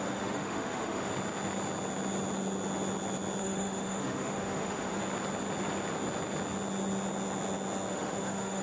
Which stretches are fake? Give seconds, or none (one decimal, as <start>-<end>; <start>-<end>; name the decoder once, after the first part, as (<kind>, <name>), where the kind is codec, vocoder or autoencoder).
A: 0.0-1.1 (autoencoder, DAC-VAE); 3.4-5.0; 7.9-8.6